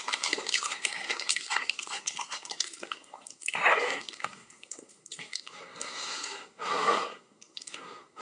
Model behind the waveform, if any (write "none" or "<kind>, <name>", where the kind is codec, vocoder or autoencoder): codec, SNAC